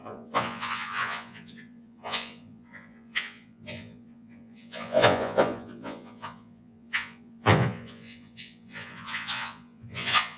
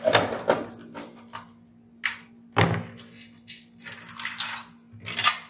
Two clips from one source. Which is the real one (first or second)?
second